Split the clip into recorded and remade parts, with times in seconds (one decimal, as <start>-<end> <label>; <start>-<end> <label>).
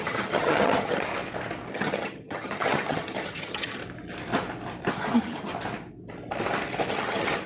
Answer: 0.0-1.1 remade; 1.1-1.7 recorded; 1.7-3.8 remade; 3.8-4.9 recorded; 4.9-5.5 remade; 5.5-6.9 recorded; 6.9-7.5 remade